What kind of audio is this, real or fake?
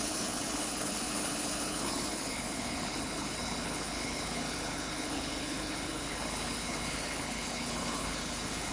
fake